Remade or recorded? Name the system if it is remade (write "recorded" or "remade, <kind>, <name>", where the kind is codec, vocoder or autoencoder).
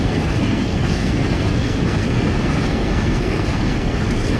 remade, codec, SNAC